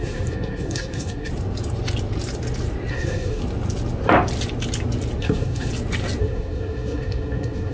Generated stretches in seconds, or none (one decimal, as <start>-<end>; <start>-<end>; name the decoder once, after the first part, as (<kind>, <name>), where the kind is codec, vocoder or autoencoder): 0.0-1.3 (codec, SNAC); 2.9-3.4; 5.2-5.7; 6.2-7.7